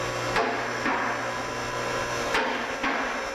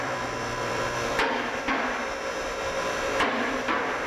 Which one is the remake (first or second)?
second